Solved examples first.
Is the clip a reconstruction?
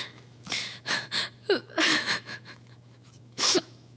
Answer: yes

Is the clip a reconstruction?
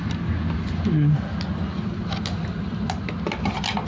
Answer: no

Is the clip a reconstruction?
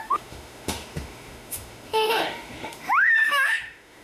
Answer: yes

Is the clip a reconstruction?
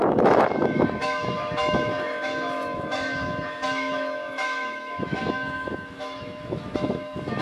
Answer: yes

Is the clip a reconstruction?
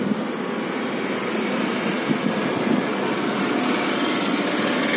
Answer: no